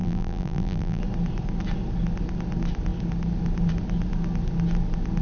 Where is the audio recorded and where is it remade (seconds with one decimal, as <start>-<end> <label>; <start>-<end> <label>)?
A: 0.0-1.0 remade; 1.0-5.2 recorded